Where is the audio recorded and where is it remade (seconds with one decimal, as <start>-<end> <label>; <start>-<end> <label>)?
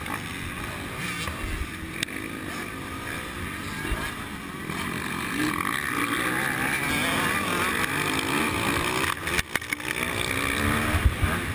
0.0-11.5 recorded